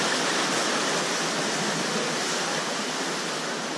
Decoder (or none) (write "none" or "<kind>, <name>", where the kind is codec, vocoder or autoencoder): none